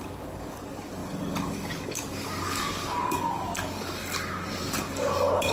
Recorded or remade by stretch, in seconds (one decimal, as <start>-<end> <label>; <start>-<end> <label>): 0.0-5.5 remade